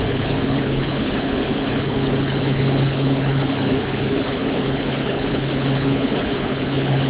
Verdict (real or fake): fake